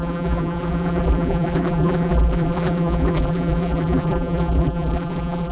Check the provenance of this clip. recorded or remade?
remade